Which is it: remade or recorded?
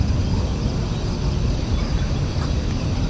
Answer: recorded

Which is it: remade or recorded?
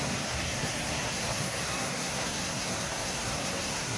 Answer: remade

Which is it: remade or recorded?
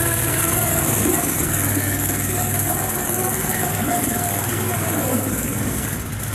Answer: remade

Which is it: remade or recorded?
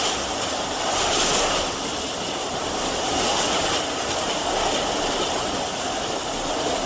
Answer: recorded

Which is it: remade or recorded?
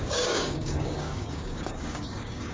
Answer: remade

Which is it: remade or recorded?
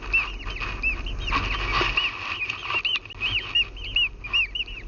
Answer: recorded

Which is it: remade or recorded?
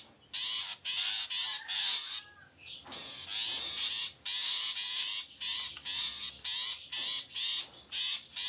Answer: recorded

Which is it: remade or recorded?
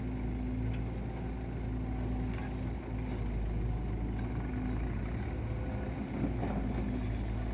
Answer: recorded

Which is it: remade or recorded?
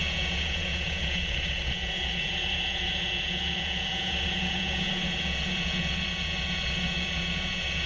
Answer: remade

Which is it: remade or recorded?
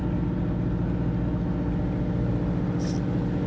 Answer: recorded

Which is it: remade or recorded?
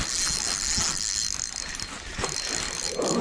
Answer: recorded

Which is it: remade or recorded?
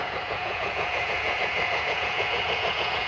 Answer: remade